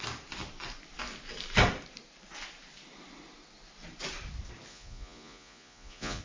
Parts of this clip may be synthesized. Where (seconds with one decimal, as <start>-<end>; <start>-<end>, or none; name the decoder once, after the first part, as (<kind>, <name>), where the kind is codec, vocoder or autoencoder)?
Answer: 4.7-6.2 (vocoder, Vocos)